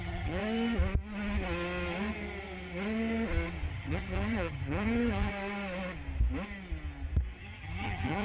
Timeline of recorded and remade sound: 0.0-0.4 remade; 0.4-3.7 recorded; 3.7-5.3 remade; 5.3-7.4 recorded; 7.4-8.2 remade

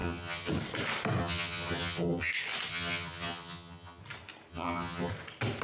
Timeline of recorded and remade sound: 0.0-0.5 remade; 0.5-1.2 recorded; 1.2-2.3 remade; 2.3-2.7 recorded; 2.7-4.0 remade; 4.0-4.5 recorded; 4.5-5.1 remade; 5.1-5.6 recorded

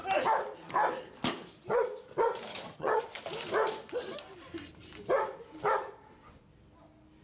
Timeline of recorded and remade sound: 0.0-2.5 recorded; 2.5-3.0 remade; 3.0-7.2 recorded